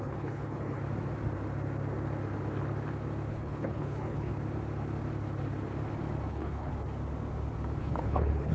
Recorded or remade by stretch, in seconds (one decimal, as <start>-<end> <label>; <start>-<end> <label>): 0.0-0.8 remade; 0.8-3.3 recorded; 3.3-4.3 remade; 4.3-6.3 recorded; 6.3-6.7 remade; 6.7-7.8 recorded; 7.8-8.5 remade